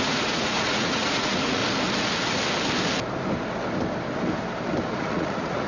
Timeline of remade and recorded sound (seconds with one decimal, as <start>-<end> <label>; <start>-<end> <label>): 0.0-1.6 remade; 1.6-5.0 recorded; 5.0-5.7 remade